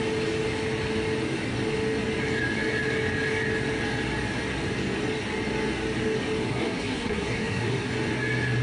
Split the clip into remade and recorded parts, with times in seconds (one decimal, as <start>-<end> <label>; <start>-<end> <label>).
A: 0.0-6.5 recorded; 6.5-7.9 remade; 7.9-8.6 recorded